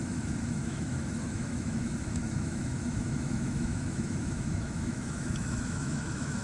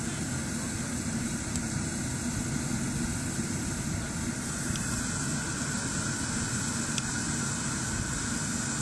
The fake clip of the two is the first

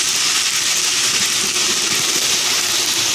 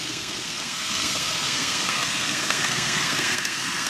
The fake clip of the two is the second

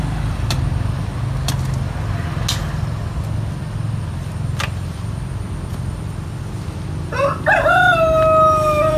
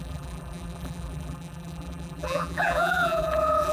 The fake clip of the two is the second